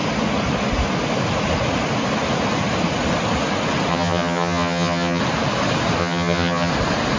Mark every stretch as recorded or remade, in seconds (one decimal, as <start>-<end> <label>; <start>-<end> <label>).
0.0-3.9 recorded; 3.9-5.2 remade; 5.2-6.0 recorded; 6.0-6.7 remade; 6.7-7.2 recorded